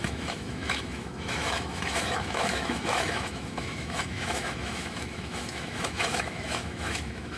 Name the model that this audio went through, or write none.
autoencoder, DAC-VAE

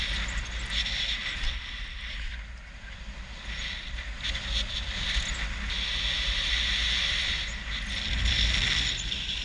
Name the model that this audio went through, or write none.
none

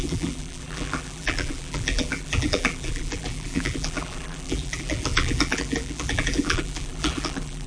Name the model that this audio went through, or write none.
vocoder, BigVGAN v2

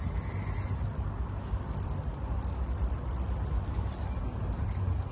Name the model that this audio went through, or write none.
none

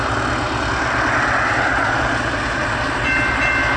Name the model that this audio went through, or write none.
none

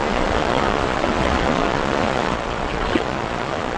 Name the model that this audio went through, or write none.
vocoder, Vocos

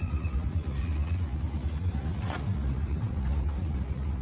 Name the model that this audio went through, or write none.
vocoder, Vocos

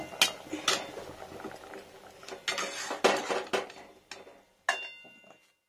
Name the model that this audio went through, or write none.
none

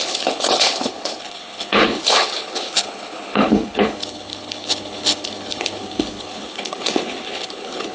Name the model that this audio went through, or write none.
codec, HILCodec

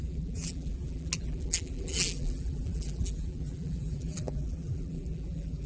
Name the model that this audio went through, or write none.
vocoder, BigVGAN v2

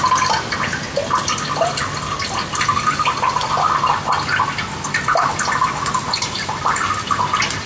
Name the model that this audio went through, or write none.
none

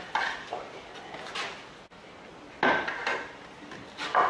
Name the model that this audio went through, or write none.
none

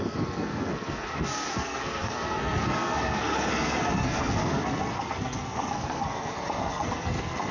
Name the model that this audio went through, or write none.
codec, SNAC